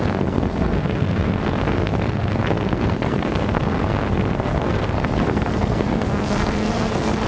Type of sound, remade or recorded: remade